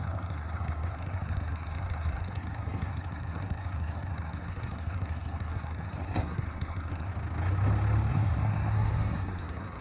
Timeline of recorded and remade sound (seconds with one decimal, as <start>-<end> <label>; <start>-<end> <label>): 0.0-7.1 remade; 7.1-8.1 recorded; 8.1-9.8 remade